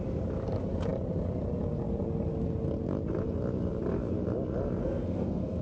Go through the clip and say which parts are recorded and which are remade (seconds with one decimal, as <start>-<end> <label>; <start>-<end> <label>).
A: 0.0-4.8 recorded; 4.8-5.6 remade